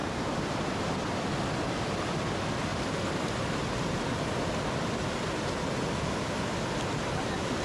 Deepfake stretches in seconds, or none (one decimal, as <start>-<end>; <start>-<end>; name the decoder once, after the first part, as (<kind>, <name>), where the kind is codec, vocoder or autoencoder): 0.0-0.9 (vocoder, BigVGAN v2); 2.7-3.3